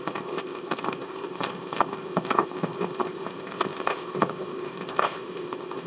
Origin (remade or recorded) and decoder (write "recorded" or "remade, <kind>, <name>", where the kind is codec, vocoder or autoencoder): remade, codec, ZipCodec